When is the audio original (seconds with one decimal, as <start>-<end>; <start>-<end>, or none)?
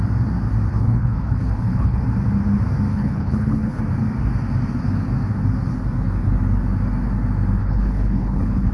0.0-0.7; 2.0-2.9; 3.8-7.6